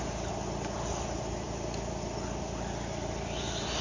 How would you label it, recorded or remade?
recorded